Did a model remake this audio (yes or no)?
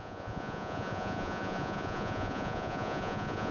yes